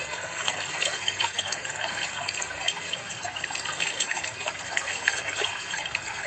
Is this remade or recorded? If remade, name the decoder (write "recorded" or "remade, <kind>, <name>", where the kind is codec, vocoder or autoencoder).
remade, codec, SNAC